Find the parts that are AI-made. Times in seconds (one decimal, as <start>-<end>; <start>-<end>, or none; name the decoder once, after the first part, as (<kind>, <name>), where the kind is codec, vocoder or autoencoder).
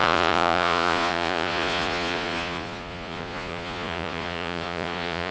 0.0-5.3 (vocoder, Vocos)